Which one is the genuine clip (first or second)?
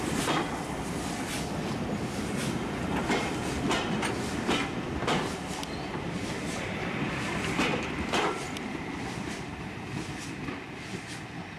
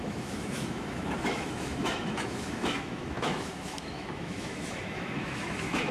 first